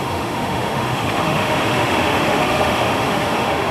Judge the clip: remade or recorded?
remade